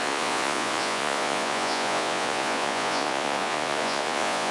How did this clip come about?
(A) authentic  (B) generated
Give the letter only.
B